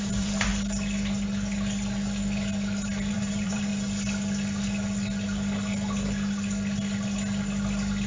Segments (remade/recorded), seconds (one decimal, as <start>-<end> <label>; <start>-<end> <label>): 0.0-0.5 remade; 0.5-3.1 recorded; 3.1-3.7 remade; 3.7-8.1 recorded